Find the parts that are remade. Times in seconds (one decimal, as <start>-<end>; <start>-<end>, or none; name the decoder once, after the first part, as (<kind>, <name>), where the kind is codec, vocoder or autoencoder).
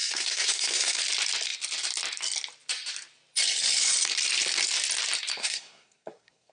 0.0-1.0 (codec, SNAC); 5.4-6.5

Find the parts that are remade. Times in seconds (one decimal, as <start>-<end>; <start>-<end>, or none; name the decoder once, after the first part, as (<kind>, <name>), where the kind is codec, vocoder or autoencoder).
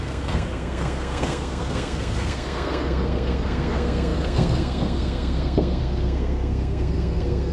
0.0-7.5 (codec, SNAC)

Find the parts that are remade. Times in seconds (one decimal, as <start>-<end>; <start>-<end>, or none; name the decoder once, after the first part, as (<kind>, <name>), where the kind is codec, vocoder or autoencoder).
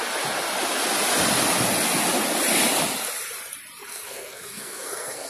3.9-5.3 (codec, SNAC)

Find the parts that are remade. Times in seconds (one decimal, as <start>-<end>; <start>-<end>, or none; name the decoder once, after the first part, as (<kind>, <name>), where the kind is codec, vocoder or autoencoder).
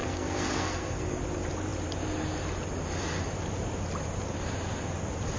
0.0-1.2 (codec, SNAC)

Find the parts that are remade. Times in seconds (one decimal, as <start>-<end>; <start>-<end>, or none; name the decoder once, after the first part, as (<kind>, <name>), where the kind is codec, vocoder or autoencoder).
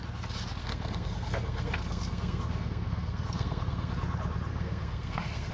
0.6-3.9 (codec, SNAC); 4.5-5.5